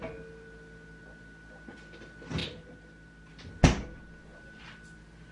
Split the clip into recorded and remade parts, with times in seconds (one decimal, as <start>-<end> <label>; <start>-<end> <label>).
0.0-5.3 recorded